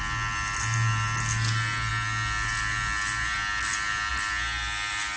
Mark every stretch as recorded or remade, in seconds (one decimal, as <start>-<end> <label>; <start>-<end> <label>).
0.0-5.2 recorded